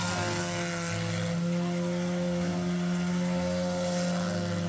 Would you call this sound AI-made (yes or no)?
no